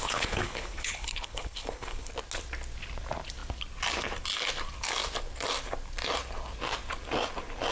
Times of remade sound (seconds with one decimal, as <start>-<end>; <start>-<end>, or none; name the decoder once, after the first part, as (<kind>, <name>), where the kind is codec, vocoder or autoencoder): 0.0-2.1 (codec, HILCodec)